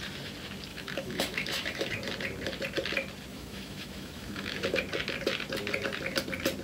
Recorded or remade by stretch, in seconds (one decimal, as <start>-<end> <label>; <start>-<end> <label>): 0.0-0.7 recorded; 0.7-1.9 remade; 1.9-3.3 recorded; 3.3-4.8 remade; 4.8-6.6 recorded